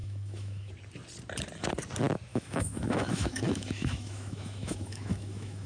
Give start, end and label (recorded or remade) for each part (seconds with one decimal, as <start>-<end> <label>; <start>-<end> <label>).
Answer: 0.0-0.7 remade; 0.7-2.3 recorded; 2.3-5.7 remade